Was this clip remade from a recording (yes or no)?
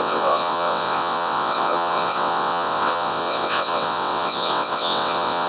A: yes